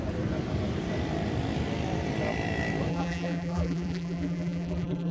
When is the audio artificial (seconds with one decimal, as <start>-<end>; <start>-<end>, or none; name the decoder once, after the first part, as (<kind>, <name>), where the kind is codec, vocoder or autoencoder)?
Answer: 2.9-5.1 (vocoder, BigVGAN v2)